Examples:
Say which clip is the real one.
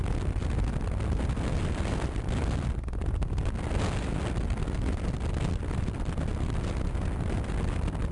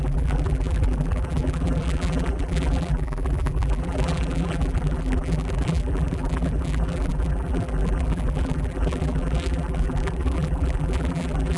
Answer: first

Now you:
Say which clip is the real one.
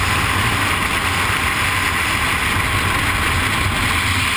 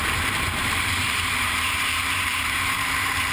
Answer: first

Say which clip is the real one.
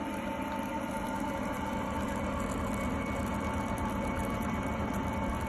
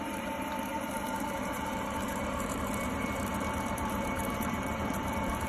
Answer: first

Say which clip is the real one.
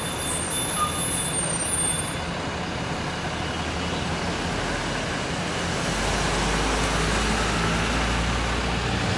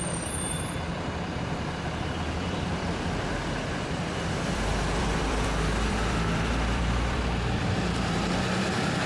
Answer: first